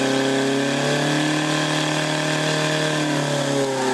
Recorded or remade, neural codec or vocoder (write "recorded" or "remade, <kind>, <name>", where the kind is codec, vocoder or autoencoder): recorded